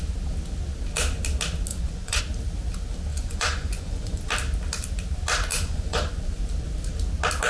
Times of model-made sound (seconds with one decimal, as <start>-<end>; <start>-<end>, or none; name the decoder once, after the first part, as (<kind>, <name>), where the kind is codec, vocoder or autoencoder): 1.7-2.2 (vocoder, Vocos); 3.1-4.2; 5.5-6.1